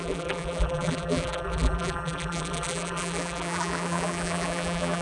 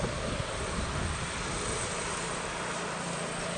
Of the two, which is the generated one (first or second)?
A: first